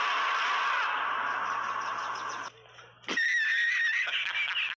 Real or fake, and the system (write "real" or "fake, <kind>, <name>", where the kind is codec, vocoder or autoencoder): real